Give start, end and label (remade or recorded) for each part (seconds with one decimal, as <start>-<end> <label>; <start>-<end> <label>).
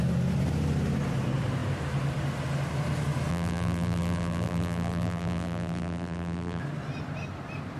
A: 0.0-3.3 recorded; 3.3-6.6 remade; 6.6-7.8 recorded